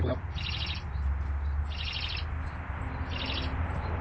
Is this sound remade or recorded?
recorded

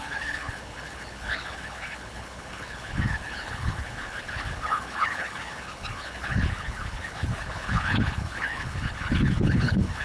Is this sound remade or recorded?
remade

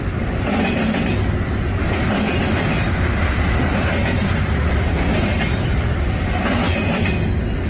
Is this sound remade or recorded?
recorded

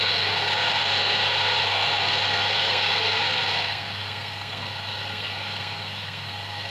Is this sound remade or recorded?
remade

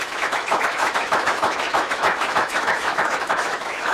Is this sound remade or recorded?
remade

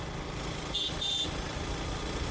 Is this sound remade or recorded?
recorded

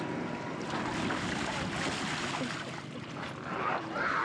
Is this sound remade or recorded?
recorded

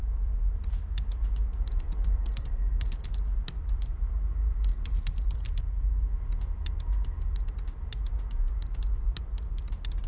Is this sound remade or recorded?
recorded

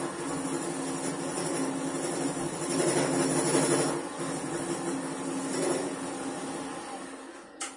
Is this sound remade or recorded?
recorded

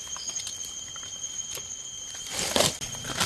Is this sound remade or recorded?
recorded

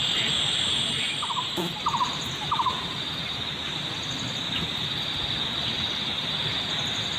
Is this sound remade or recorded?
remade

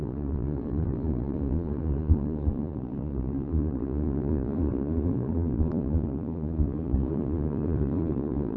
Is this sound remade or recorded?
remade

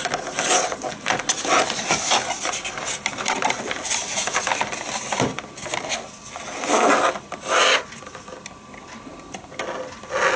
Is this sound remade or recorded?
recorded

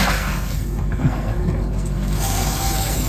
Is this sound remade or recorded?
remade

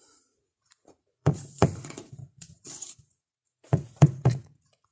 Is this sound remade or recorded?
remade